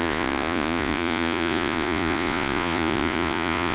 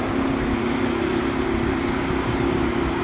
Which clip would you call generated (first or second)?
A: first